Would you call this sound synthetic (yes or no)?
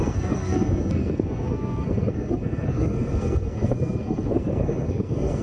yes